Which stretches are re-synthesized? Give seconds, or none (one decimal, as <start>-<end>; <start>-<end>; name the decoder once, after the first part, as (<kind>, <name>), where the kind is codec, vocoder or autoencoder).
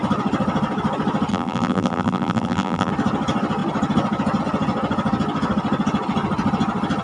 1.3-2.9 (vocoder, BigVGAN v2)